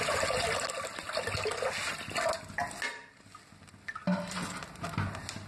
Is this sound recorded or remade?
recorded